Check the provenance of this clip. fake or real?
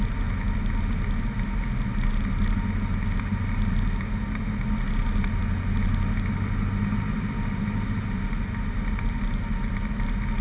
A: real